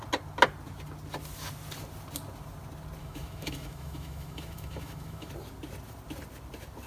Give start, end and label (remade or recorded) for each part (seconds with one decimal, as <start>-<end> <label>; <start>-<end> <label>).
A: 0.0-3.0 recorded; 3.0-5.3 remade; 5.3-6.9 recorded